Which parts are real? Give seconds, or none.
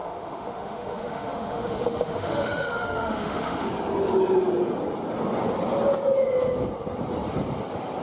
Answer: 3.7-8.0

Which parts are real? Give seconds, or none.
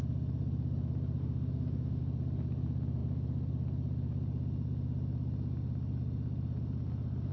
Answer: 0.0-1.2; 2.0-7.3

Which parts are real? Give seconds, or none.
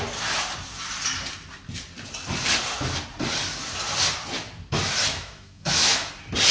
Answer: 0.0-5.1; 6.1-6.5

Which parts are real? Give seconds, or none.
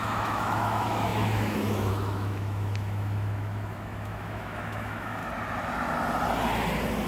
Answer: 5.2-7.1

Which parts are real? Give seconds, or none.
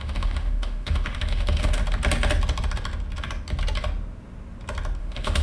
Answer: 1.8-5.0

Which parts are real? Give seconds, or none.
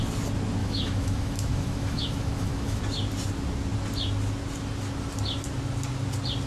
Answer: 0.0-0.6; 2.8-6.5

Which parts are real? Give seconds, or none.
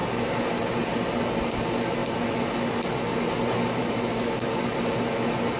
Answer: 0.0-3.8; 4.5-5.6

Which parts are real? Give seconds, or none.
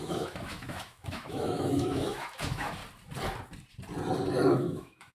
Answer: 2.8-4.6